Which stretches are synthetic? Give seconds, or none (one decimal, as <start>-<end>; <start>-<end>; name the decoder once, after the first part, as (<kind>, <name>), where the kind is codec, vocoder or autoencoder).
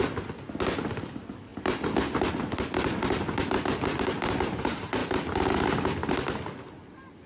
none